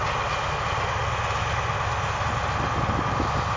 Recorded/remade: recorded